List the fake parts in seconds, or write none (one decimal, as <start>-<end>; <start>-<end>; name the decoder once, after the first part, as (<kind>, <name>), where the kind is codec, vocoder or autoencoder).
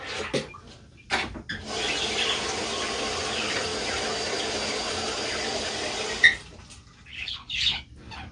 7.1-7.8 (codec, HILCodec)